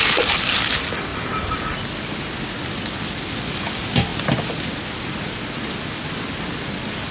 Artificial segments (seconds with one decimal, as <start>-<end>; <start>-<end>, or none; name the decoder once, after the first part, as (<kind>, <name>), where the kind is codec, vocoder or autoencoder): 1.1-1.6 (vocoder, BigVGAN v2)